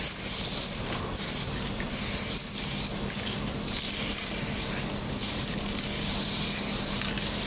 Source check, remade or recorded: recorded